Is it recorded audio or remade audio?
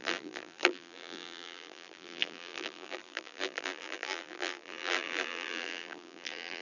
remade